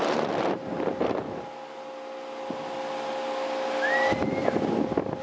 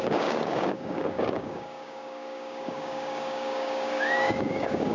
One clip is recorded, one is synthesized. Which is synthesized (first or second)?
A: second